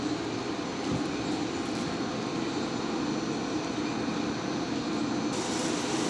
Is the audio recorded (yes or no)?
yes